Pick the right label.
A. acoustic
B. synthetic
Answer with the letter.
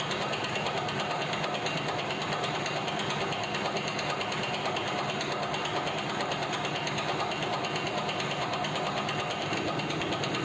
A